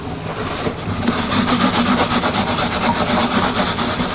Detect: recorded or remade recorded